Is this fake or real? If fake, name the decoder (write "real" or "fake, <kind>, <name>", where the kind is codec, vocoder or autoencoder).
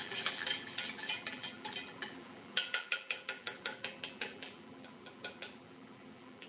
fake, vocoder, BigVGAN v2